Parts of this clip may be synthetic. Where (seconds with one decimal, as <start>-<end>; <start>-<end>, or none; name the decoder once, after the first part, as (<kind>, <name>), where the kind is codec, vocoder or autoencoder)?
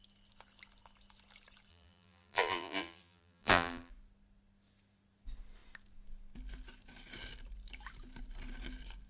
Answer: 1.7-3.9 (vocoder, BigVGAN v2)